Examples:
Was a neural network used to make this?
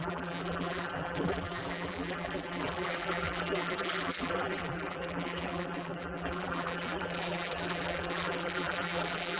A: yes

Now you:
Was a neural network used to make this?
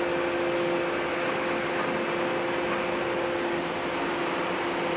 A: no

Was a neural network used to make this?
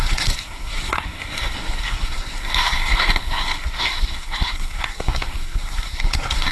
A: yes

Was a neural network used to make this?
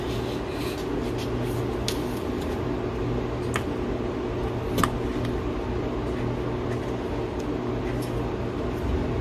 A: no